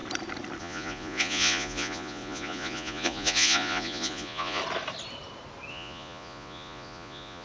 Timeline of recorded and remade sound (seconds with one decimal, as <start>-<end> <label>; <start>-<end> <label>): 0.0-0.6 recorded; 0.6-4.6 remade; 4.6-5.7 recorded; 5.7-7.4 remade